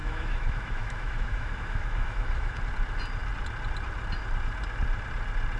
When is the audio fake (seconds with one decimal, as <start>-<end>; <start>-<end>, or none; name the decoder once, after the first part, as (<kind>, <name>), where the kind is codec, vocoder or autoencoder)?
0.0-2.6 (autoencoder, DAC-VAE)